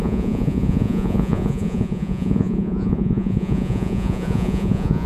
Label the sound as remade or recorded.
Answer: remade